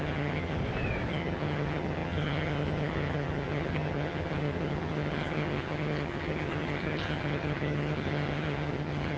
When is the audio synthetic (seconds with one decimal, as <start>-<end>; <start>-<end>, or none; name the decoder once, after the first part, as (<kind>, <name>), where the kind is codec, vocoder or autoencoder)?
0.0-0.6 (vocoder, HiFi-GAN); 1.1-9.2